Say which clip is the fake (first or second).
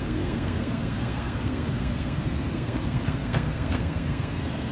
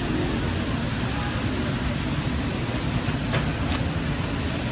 first